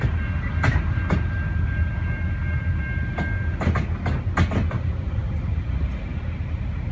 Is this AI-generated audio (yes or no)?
no